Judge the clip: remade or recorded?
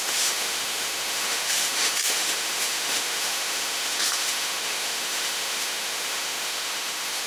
remade